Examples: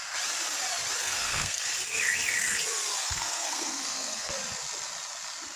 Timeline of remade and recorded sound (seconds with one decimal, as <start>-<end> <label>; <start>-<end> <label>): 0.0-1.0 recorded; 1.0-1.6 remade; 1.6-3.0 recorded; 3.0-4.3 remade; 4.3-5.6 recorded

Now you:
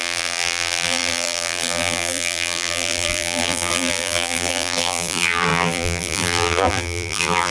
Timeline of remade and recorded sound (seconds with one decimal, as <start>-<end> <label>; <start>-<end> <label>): 0.0-7.5 remade

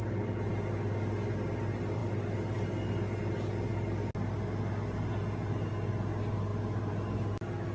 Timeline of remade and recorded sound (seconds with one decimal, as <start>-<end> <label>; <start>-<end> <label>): 0.0-7.7 recorded